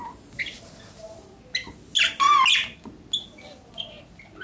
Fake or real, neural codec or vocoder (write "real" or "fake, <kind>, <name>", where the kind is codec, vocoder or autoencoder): real